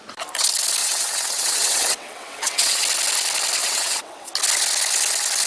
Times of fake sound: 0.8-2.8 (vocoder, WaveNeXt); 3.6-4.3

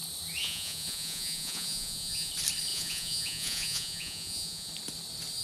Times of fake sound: 0.4-2.3 (vocoder, Vocos); 2.7-4.7

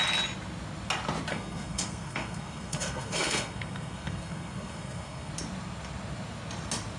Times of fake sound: 1.3-5.3 (codec, SNAC)

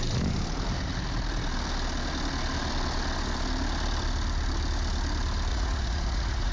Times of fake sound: 5.5-6.5 (vocoder, Vocos)